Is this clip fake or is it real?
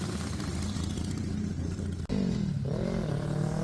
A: real